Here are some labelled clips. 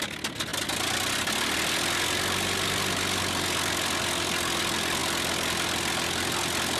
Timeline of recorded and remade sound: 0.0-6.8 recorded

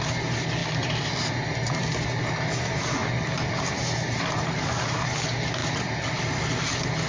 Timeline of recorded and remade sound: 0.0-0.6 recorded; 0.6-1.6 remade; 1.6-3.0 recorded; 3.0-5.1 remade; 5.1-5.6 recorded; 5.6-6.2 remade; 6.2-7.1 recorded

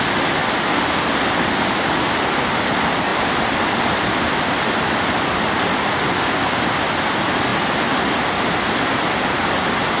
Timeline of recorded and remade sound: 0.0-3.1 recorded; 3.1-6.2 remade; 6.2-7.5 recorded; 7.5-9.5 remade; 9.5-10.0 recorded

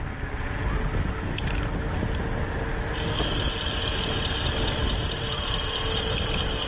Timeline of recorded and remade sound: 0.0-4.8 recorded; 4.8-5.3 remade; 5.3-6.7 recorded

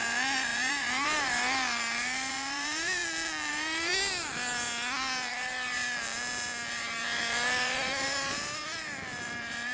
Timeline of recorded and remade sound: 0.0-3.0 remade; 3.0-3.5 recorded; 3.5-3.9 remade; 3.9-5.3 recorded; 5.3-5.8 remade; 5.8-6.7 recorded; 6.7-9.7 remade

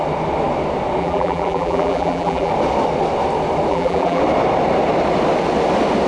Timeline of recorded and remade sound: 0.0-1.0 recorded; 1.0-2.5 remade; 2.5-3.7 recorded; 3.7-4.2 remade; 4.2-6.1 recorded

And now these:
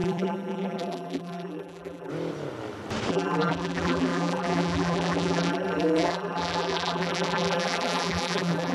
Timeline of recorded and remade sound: 0.0-2.1 remade; 2.1-3.1 recorded; 3.1-8.7 remade

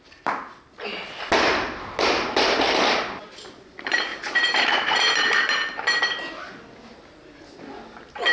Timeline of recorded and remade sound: 0.0-4.1 recorded; 4.1-6.0 remade; 6.0-8.3 recorded